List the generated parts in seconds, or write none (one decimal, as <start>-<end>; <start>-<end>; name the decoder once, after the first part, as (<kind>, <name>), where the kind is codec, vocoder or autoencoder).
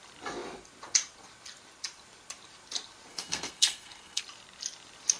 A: 3.1-4.2 (codec, SNAC)